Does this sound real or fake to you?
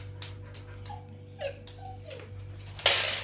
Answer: real